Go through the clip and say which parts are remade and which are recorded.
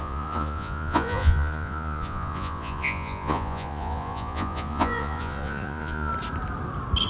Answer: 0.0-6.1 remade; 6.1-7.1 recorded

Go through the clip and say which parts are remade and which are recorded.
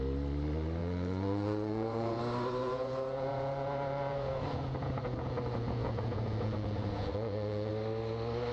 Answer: 0.0-0.8 recorded; 0.8-2.2 remade; 2.2-2.6 recorded; 2.6-7.7 remade; 7.7-8.5 recorded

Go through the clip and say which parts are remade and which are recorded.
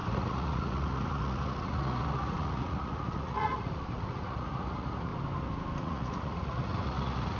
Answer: 0.0-5.1 remade; 5.1-5.8 recorded; 5.8-7.4 remade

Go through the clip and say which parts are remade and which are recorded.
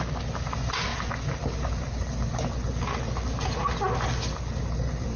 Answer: 0.0-5.2 recorded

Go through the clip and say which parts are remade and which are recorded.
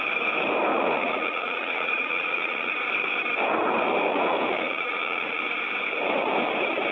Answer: 0.0-0.7 recorded; 0.7-2.7 remade; 2.7-4.1 recorded; 4.1-5.4 remade; 5.4-6.9 recorded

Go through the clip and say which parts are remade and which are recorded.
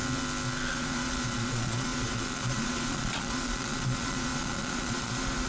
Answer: 0.0-0.7 recorded; 0.7-5.5 remade